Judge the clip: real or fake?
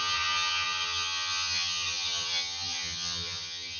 fake